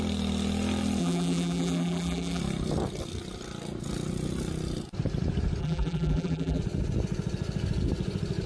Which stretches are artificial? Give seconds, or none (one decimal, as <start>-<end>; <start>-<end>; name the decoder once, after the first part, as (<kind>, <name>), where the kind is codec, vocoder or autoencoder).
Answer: 1.0-2.4 (vocoder, BigVGAN v2); 5.6-6.6